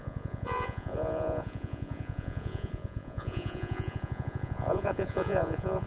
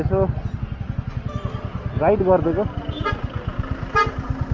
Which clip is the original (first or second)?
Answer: second